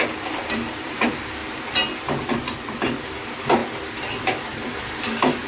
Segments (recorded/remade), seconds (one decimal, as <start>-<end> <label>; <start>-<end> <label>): 0.0-1.4 remade; 1.4-2.3 recorded; 2.3-3.6 remade; 3.6-4.4 recorded; 4.4-5.5 remade